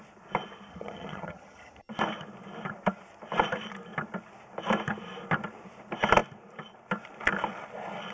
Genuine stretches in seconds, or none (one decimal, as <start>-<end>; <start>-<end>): 0.0-0.7; 1.9-8.1